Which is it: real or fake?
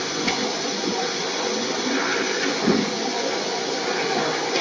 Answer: fake